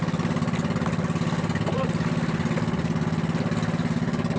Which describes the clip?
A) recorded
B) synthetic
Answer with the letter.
A